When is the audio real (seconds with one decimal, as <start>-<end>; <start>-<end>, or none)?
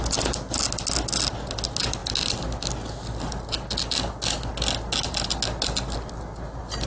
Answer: 0.0-6.9